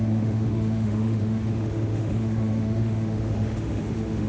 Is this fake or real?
fake